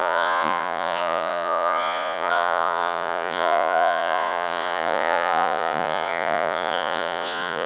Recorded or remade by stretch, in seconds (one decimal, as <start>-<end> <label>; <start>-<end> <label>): 0.0-7.7 remade